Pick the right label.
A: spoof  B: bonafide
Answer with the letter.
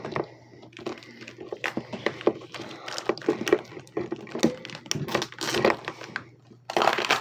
B